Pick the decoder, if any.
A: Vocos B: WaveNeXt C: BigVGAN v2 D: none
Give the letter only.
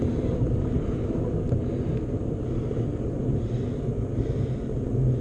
D